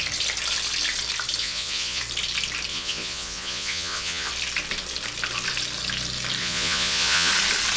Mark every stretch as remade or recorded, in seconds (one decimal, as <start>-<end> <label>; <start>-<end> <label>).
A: 0.0-1.4 recorded; 1.4-2.0 remade; 2.0-2.7 recorded; 2.7-4.3 remade; 4.3-6.4 recorded; 6.4-7.3 remade; 7.3-7.8 recorded